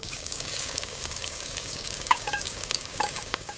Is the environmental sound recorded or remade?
remade